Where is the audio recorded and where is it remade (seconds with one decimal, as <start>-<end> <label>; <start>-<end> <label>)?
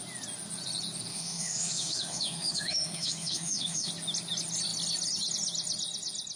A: 0.0-1.1 recorded; 1.1-3.9 remade; 3.9-6.4 recorded